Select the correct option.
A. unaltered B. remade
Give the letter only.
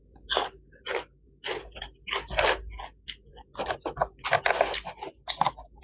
A